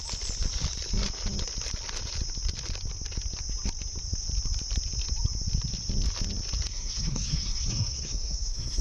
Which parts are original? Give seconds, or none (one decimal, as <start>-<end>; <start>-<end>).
0.0-6.7